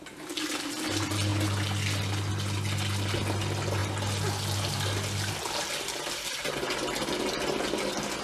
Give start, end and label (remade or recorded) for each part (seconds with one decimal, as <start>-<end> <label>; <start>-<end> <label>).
0.0-8.2 recorded